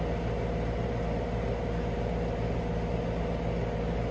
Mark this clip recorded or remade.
recorded